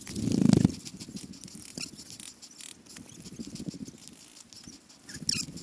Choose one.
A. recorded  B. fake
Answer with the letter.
A